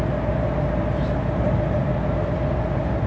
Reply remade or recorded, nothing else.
recorded